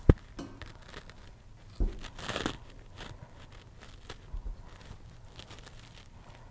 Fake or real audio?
real